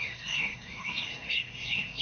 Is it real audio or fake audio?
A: fake